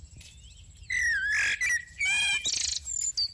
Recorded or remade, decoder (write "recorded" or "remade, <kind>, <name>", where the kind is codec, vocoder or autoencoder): recorded